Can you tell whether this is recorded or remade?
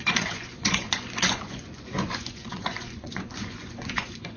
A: remade